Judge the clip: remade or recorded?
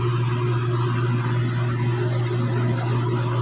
recorded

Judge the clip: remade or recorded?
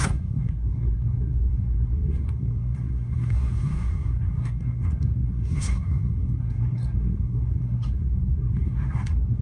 remade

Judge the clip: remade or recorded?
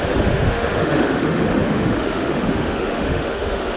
remade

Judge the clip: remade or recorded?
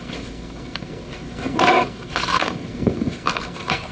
remade